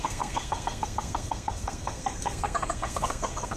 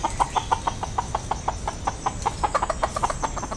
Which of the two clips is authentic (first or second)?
second